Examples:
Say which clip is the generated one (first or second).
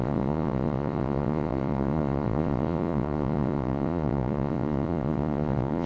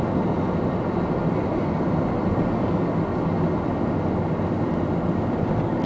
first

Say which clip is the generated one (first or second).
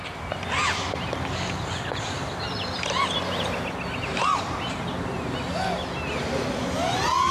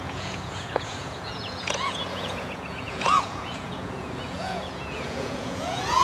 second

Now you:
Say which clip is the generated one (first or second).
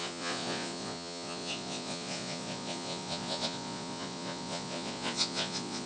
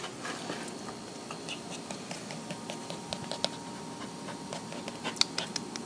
first